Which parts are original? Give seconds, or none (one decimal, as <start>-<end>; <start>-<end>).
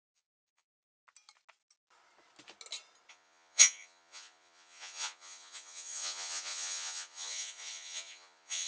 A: 1.0-3.1